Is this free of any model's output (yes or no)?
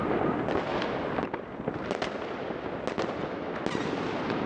yes